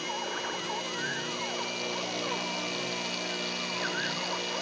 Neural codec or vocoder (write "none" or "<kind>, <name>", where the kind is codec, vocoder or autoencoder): none